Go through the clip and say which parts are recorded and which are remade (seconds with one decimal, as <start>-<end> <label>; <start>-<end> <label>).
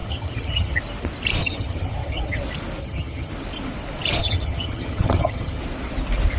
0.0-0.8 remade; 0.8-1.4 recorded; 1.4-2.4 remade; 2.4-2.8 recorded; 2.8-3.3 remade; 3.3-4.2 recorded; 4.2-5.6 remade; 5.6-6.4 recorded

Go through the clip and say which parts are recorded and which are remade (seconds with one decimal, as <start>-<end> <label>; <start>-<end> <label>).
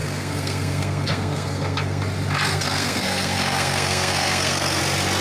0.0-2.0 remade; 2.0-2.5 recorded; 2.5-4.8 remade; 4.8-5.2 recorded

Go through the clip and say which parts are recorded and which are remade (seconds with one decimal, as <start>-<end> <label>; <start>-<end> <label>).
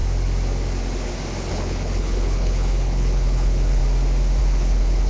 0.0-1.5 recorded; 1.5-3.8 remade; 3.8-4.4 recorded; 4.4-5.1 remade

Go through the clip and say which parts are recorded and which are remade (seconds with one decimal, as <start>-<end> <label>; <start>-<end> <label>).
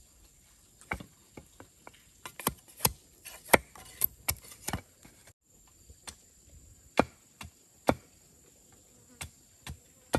0.0-10.2 recorded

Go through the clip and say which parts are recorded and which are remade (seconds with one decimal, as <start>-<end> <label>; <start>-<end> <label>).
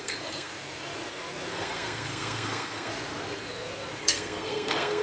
0.0-0.5 remade; 0.5-1.5 recorded; 1.5-2.9 remade; 2.9-4.0 recorded; 4.0-5.0 remade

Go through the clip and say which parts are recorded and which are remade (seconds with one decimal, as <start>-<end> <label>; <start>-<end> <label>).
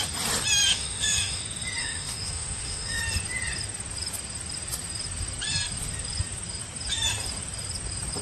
0.0-0.7 recorded; 0.7-1.4 remade; 1.4-1.8 recorded; 1.8-3.0 remade; 3.0-8.2 recorded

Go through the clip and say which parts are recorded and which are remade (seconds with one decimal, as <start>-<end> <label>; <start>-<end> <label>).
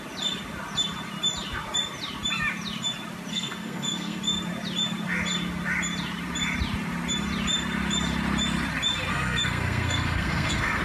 0.0-3.3 recorded; 3.3-4.2 remade; 4.2-9.1 recorded; 9.1-10.8 remade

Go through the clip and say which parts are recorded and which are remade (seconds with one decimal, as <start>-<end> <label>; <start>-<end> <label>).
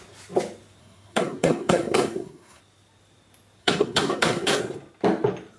0.0-0.8 recorded; 0.8-2.6 remade; 2.6-3.6 recorded; 3.6-4.6 remade; 4.6-5.6 recorded